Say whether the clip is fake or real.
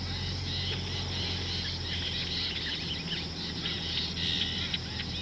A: real